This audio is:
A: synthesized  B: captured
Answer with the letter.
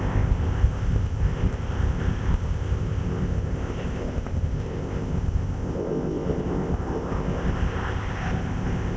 A